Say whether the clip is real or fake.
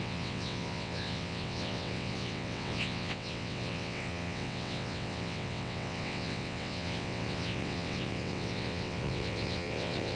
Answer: fake